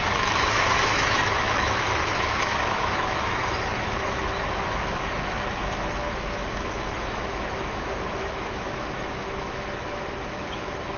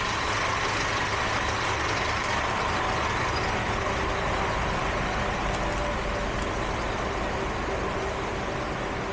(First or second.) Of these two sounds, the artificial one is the first